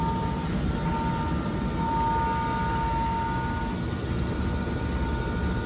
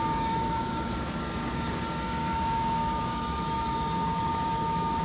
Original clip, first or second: first